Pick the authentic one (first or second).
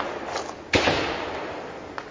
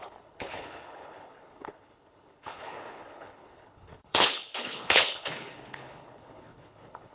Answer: first